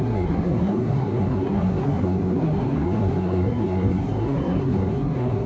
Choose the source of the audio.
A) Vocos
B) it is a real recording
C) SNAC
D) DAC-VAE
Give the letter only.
C